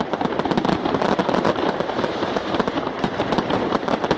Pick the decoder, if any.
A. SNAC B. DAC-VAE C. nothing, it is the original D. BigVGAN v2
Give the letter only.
D